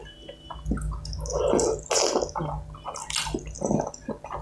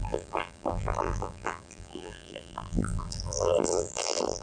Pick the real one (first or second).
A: first